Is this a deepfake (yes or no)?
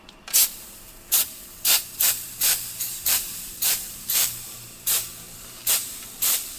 yes